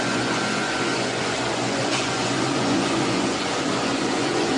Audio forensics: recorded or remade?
remade